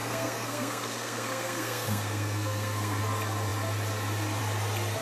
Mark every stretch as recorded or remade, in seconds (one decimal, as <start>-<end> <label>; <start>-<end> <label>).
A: 0.0-3.0 remade; 3.0-5.0 recorded